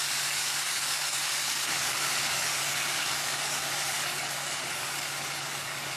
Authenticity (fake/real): fake